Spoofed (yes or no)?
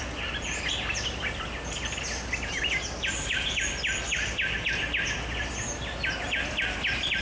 no